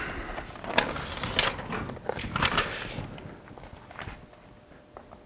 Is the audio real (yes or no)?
yes